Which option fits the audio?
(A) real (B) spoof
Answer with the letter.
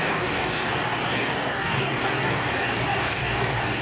B